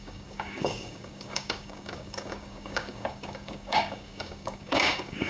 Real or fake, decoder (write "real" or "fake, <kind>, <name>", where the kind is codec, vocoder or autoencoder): fake, codec, DAC